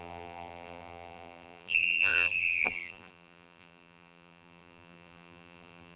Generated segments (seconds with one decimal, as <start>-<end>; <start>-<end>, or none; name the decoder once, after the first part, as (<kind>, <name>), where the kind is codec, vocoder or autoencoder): 0.0-6.0 (vocoder, BigVGAN v2)